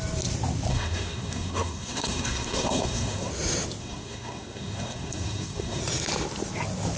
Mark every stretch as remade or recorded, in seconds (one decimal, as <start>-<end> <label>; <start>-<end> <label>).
0.0-0.7 recorded; 0.7-3.3 remade; 3.3-3.8 recorded; 3.8-5.8 remade; 5.8-7.0 recorded